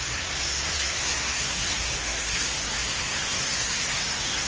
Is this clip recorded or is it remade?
remade